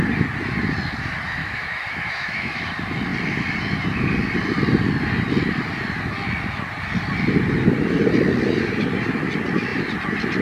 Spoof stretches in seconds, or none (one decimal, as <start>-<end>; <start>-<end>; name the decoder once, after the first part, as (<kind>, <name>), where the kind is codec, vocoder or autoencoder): 1.4-2.7 (autoencoder, DAC-VAE)

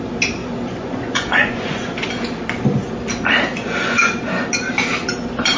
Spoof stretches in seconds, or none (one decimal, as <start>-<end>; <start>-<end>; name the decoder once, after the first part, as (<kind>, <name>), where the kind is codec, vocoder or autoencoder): 0.4-2.1 (vocoder, Vocos); 3.5-4.1